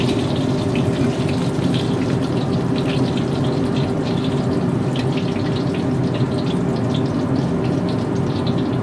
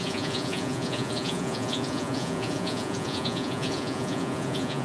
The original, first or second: first